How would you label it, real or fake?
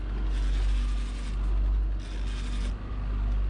real